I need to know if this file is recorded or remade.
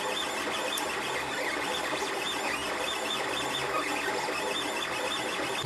recorded